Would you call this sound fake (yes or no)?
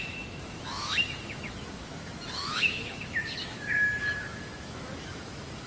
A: yes